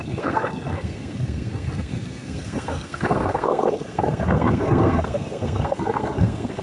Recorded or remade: remade